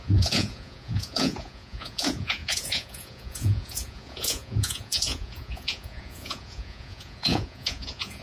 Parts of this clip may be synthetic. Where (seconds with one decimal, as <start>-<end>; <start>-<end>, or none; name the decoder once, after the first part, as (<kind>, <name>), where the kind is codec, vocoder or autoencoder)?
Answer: 0.0-8.2 (vocoder, Vocos)